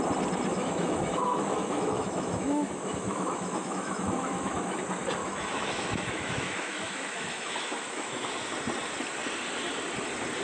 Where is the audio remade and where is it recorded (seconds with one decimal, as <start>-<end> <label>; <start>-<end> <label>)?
0.0-0.5 recorded; 0.5-4.8 remade; 4.8-5.2 recorded; 5.2-8.3 remade; 8.3-10.4 recorded